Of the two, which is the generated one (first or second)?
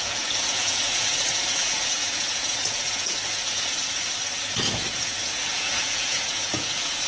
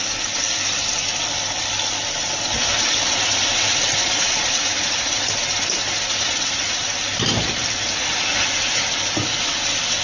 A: first